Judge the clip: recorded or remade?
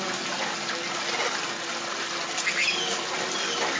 recorded